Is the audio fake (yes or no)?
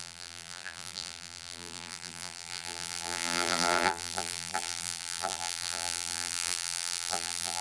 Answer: yes